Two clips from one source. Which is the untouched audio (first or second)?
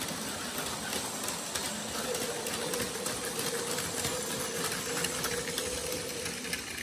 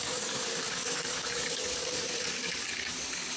first